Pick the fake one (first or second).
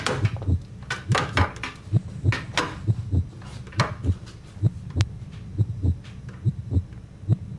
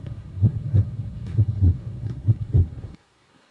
second